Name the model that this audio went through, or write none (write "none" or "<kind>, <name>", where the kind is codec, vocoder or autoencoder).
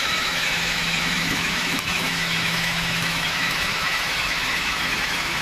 autoencoder, DAC-VAE